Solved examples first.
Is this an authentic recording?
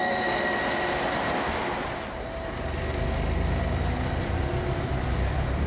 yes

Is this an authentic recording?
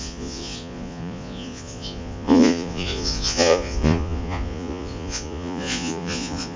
no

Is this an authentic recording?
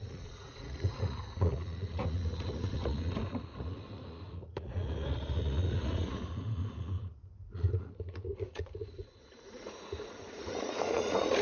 no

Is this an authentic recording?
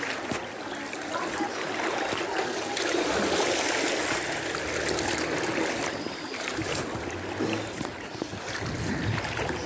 yes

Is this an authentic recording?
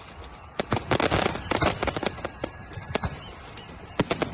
yes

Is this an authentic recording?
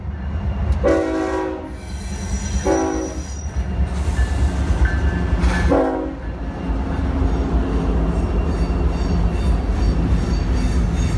yes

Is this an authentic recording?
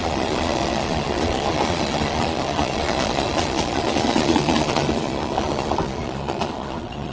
no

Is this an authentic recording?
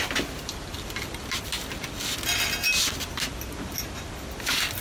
yes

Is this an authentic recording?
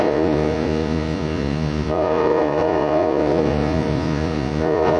no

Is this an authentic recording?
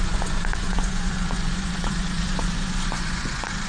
no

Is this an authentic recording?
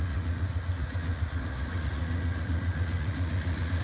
no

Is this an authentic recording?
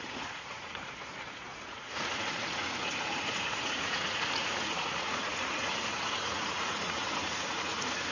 no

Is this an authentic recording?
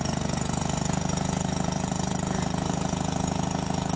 no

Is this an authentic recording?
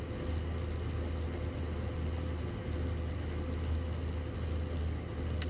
yes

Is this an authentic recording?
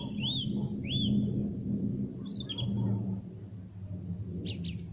yes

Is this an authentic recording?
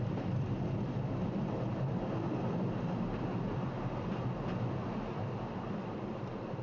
yes